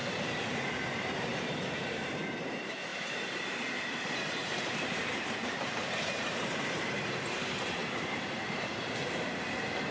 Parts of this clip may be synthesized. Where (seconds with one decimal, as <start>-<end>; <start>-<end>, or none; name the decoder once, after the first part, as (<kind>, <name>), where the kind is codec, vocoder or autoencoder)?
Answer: 0.0-9.9 (vocoder, BigVGAN v2)